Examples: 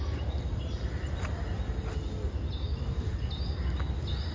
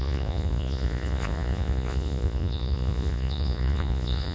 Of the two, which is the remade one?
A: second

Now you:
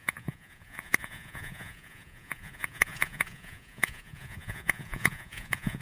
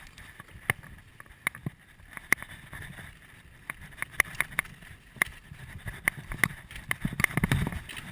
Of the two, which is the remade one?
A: first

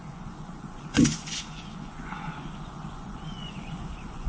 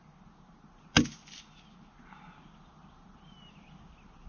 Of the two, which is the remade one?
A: first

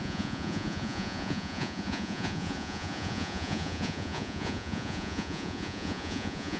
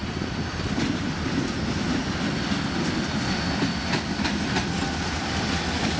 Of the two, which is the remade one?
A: first